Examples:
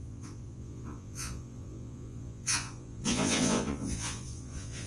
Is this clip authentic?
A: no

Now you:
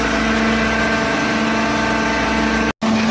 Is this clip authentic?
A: yes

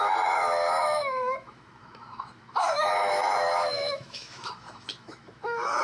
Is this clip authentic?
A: no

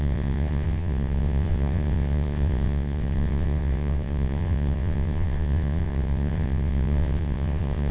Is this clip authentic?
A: no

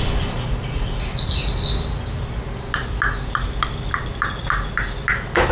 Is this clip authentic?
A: yes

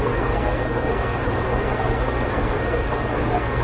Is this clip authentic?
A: no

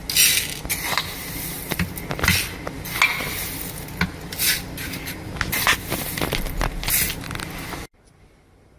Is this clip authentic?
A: yes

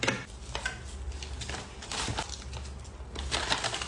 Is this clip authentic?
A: yes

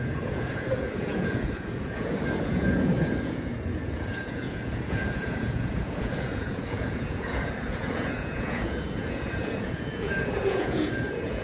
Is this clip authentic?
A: no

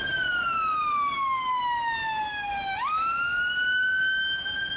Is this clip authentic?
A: yes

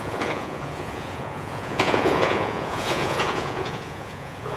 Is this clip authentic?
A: no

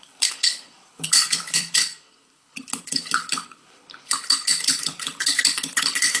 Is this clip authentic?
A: no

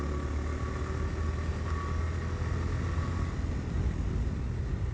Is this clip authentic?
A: yes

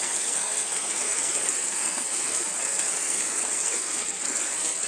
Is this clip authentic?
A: no